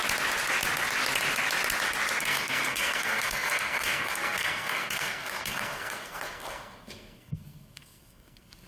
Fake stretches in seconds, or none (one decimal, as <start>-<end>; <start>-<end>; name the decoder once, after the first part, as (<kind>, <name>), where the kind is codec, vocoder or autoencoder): 2.2-8.7 (codec, SNAC)